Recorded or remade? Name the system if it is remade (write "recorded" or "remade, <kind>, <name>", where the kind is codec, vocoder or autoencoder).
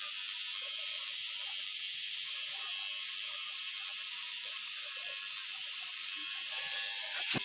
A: recorded